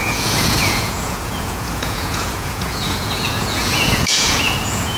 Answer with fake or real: fake